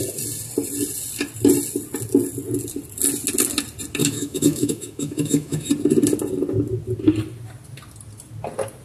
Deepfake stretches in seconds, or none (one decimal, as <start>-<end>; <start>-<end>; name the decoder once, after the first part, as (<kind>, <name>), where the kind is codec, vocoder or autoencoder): 4.0-5.7 (autoencoder, DAC-VAE)